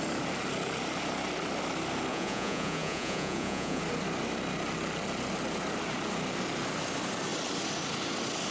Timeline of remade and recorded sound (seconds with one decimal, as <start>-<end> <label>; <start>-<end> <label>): 0.0-2.1 recorded; 2.1-3.8 remade; 3.8-8.5 recorded